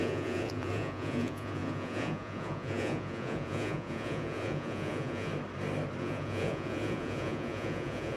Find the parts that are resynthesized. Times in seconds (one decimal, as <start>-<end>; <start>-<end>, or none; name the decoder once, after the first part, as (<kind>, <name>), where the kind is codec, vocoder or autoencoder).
0.0-5.3 (vocoder, Vocos); 6.0-8.2